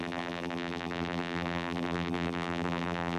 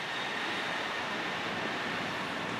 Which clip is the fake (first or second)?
first